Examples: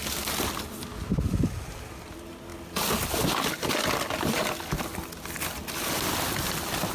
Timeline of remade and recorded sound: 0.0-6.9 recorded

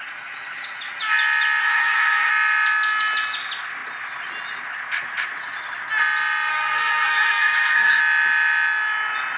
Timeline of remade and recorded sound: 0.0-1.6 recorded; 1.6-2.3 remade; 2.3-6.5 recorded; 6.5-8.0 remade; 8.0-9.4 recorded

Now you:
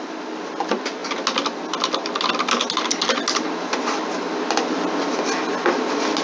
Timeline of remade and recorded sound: 0.0-6.2 recorded

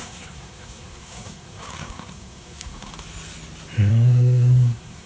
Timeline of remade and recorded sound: 0.0-2.9 remade; 2.9-3.9 recorded; 3.9-5.1 remade